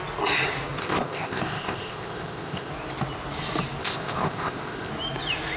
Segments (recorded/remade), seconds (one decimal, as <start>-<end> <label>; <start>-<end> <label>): 0.0-0.8 recorded; 0.8-2.7 remade; 2.7-3.8 recorded; 3.8-4.9 remade; 4.9-5.6 recorded